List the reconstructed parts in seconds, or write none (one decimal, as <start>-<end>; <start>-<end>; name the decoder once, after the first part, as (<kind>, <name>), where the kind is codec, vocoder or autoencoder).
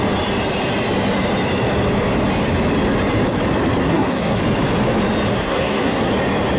3.8-4.4 (codec, SNAC); 5.3-6.1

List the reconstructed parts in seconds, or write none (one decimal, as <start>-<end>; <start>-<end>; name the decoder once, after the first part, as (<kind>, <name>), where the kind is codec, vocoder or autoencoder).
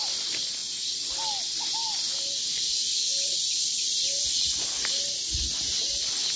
none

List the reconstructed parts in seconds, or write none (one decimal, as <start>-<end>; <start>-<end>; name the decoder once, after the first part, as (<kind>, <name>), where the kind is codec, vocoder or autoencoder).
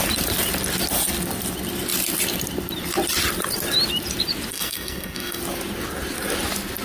4.5-5.4 (codec, SNAC)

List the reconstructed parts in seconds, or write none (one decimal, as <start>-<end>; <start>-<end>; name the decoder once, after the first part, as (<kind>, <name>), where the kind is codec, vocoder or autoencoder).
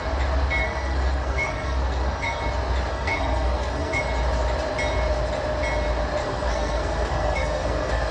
0.6-2.4 (codec, SNAC); 2.9-4.0; 6.2-8.1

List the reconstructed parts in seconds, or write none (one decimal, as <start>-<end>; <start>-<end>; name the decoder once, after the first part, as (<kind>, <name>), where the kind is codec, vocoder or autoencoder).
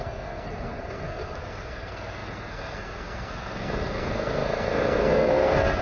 0.0-5.8 (codec, SNAC)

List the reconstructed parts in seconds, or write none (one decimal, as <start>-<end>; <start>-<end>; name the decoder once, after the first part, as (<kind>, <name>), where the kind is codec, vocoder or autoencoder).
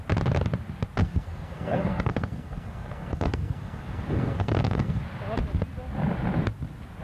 1.0-5.0 (codec, SNAC)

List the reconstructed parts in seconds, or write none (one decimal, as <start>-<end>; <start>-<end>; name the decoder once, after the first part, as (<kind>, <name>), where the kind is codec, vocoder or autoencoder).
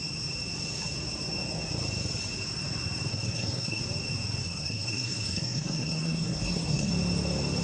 3.1-3.8 (codec, SNAC); 4.4-6.9